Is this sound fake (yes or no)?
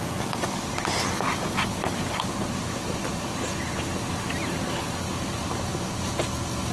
no